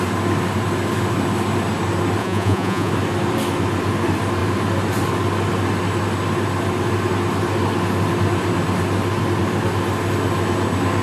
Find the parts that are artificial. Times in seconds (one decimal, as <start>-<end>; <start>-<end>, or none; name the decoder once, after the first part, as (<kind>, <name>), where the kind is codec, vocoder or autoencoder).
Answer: 2.2-2.9 (vocoder, Vocos)